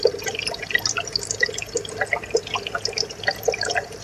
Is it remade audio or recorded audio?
recorded